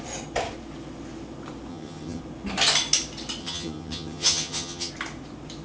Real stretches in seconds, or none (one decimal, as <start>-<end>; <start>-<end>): 0.0-1.7; 2.2-3.4; 4.9-5.6